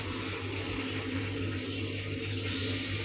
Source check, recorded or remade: recorded